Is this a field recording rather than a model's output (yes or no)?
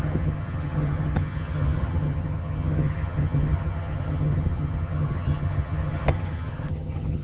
no